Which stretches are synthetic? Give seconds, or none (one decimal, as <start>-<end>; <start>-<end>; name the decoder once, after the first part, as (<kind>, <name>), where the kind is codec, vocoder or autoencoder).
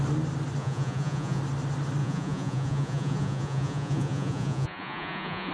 0.6-1.4 (vocoder, Vocos); 2.0-5.5